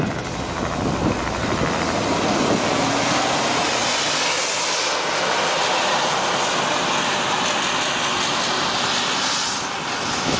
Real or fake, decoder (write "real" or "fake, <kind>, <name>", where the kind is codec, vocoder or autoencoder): real